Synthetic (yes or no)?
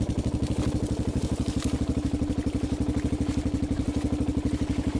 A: no